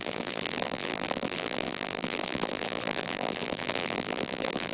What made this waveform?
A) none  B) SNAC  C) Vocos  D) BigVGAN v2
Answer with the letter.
D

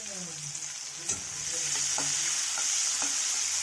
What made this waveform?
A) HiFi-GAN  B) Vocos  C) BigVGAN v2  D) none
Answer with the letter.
D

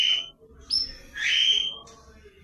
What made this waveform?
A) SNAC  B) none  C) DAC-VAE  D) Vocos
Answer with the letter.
B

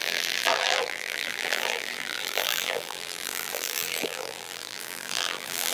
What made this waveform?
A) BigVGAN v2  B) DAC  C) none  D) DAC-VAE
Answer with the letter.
A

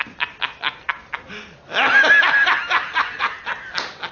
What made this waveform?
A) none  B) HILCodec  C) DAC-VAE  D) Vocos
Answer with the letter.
A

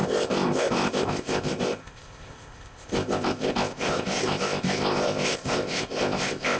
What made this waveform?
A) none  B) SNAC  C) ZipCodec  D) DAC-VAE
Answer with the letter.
C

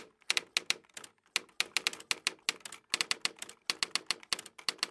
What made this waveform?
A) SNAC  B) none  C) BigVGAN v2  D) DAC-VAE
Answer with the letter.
B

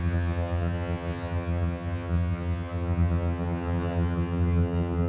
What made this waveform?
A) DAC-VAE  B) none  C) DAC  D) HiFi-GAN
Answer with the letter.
D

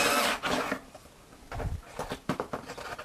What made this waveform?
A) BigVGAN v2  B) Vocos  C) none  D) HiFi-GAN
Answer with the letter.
C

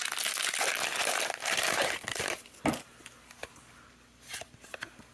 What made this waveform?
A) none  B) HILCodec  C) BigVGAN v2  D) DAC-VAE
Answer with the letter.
A